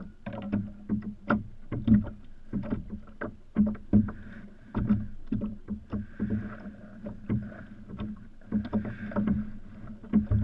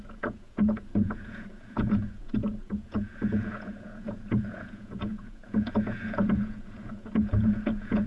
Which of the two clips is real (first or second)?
first